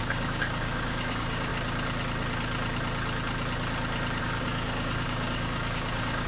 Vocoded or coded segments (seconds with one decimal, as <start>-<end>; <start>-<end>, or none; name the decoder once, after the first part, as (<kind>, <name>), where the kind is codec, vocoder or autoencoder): 0.0-1.5 (codec, DAC); 4.2-6.3